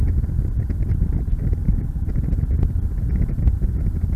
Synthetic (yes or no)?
no